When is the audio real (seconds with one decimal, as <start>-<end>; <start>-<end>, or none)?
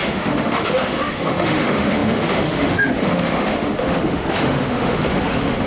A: none